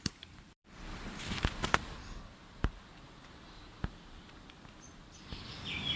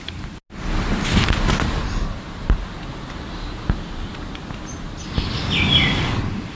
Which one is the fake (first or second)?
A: first